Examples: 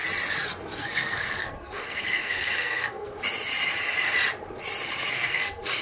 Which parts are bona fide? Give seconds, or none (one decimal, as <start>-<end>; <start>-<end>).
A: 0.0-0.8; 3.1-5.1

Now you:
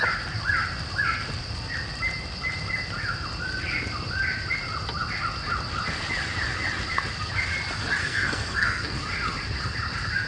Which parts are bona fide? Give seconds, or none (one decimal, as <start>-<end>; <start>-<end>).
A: 0.0-8.0; 9.0-10.3

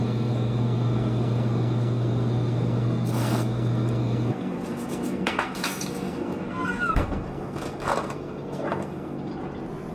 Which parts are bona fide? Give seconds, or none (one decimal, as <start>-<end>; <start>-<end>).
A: 9.3-9.9

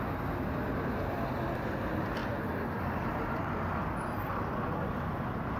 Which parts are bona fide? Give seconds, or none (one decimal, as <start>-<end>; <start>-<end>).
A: 0.0-5.6

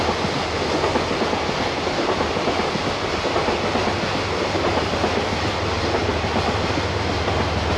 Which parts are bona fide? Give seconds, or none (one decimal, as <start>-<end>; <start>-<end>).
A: 0.0-7.8